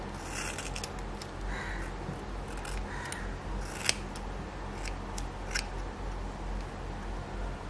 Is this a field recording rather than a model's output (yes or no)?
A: yes